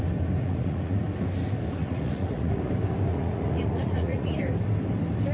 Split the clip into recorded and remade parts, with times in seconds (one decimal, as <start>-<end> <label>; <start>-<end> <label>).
0.0-0.4 recorded; 0.4-1.0 remade; 1.0-1.8 recorded; 1.8-2.7 remade; 2.7-3.1 recorded; 3.1-4.4 remade; 4.4-5.3 recorded